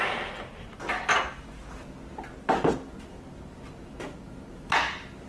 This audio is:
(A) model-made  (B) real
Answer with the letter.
B